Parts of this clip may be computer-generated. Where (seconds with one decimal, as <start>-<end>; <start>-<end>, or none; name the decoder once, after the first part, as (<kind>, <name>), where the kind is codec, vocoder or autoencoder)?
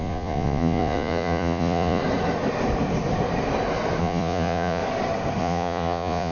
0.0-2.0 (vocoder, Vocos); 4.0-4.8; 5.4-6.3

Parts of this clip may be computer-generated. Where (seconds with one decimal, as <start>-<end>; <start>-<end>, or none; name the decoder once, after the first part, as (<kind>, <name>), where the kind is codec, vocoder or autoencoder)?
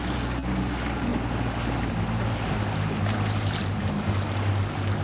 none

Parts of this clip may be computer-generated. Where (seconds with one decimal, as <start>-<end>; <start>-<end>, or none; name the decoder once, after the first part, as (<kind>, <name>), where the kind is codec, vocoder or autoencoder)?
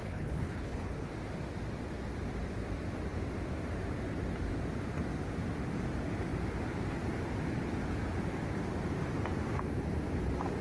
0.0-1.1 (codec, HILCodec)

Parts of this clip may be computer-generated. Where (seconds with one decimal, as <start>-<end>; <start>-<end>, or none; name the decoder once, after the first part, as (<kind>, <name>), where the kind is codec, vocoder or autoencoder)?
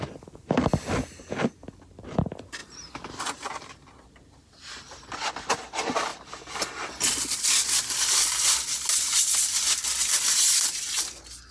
1.6-2.2 (vocoder, BigVGAN v2); 6.1-7.5; 10.0-10.8